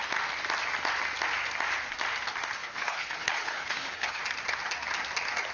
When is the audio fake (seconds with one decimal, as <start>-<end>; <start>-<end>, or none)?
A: 2.6-4.2